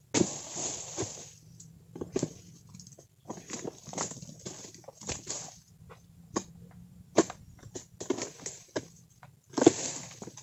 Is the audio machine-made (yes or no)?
no